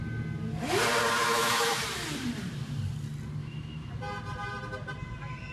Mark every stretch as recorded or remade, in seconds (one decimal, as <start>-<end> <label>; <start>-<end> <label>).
0.0-1.2 recorded; 1.2-1.8 remade; 1.8-3.4 recorded; 3.4-3.9 remade; 3.9-5.5 recorded